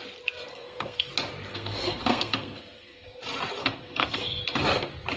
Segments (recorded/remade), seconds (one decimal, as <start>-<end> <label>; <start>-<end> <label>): 0.0-0.5 recorded; 0.5-1.1 remade; 1.1-1.5 recorded; 1.5-3.2 remade; 3.2-3.6 recorded; 3.6-4.4 remade; 4.4-5.2 recorded